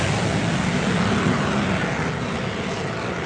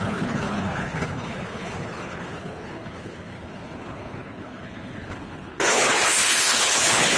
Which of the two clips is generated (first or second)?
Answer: second